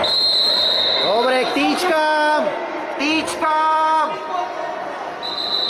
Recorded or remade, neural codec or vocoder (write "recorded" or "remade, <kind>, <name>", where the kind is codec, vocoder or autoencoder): recorded